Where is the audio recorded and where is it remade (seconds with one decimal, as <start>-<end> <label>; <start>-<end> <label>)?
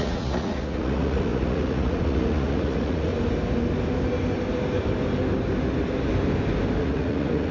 0.0-3.1 remade; 3.1-6.8 recorded; 6.8-7.5 remade